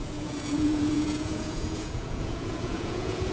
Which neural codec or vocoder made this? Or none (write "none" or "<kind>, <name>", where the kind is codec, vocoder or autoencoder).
vocoder, Vocos